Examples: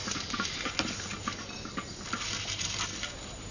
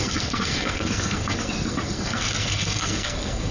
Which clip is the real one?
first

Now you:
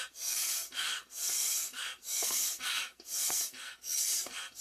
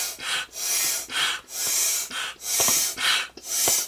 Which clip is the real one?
second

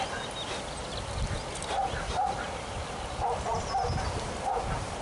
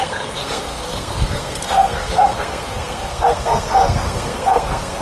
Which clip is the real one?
first